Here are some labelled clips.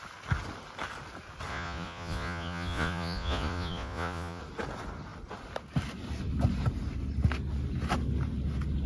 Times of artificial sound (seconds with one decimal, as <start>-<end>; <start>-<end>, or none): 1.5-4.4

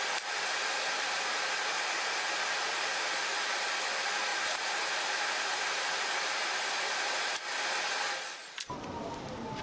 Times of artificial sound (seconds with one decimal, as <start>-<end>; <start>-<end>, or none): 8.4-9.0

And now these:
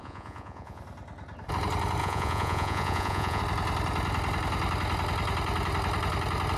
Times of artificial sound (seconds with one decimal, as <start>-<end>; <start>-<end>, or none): 0.0-0.8; 2.0-3.4

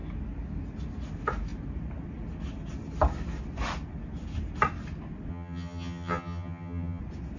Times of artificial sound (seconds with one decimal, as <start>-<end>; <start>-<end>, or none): 5.3-7.0